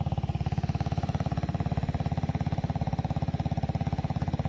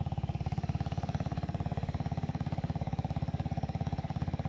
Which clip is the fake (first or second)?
second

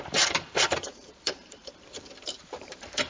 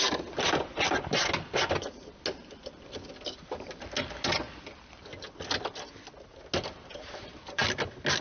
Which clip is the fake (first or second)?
first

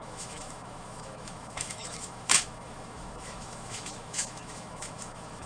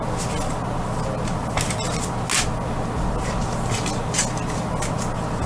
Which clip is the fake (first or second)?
first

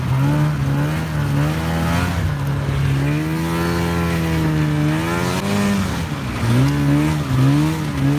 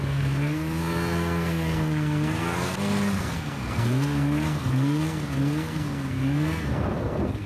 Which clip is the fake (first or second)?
second